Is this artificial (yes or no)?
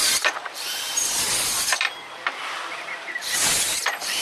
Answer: yes